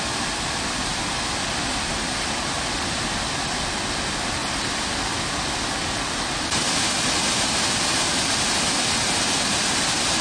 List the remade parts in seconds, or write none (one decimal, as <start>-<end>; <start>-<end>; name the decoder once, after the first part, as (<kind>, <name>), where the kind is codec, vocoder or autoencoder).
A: 4.4-5.2 (vocoder, BigVGAN v2)

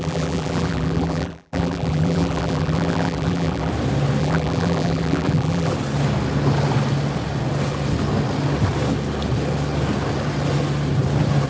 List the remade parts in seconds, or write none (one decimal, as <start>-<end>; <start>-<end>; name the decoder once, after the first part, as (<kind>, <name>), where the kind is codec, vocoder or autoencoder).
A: 0.0-3.7 (vocoder, BigVGAN v2); 4.2-5.7